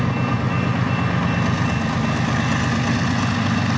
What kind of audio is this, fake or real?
real